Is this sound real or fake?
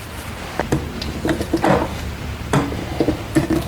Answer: real